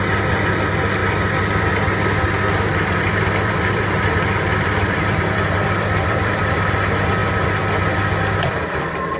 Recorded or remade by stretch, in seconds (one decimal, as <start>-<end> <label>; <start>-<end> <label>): 0.0-2.7 recorded; 2.7-6.5 remade; 6.5-9.2 recorded